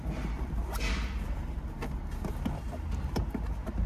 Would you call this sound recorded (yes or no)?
yes